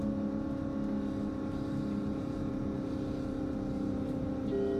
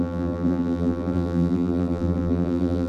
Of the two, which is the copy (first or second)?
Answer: second